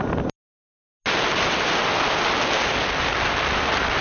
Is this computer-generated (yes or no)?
no